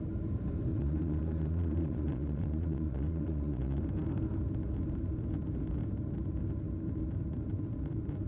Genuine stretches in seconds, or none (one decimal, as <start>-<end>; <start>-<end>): 0.0-0.7; 3.8-8.3